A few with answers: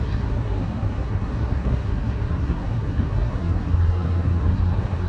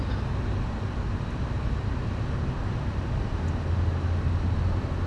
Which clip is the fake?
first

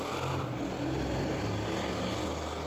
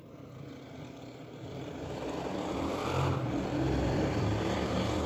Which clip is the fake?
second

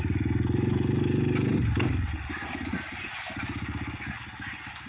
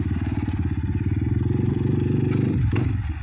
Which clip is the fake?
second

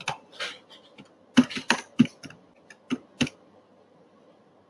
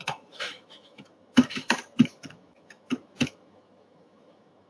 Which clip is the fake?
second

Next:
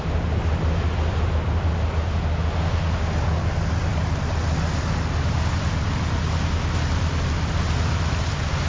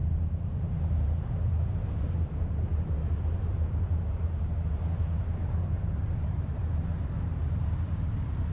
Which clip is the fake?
second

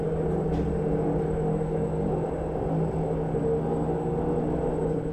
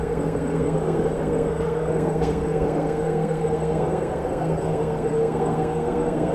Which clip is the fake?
second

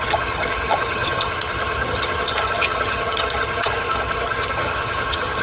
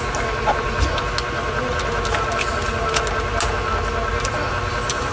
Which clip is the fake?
first